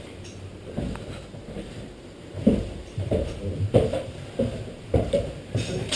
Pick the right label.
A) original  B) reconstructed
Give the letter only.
B